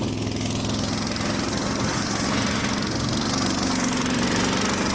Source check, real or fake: real